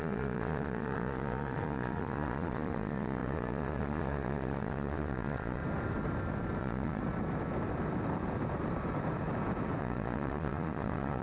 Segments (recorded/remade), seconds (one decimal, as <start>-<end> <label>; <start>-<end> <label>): 0.0-5.6 remade; 5.6-6.6 recorded; 6.6-7.0 remade; 7.0-9.8 recorded; 9.8-11.2 remade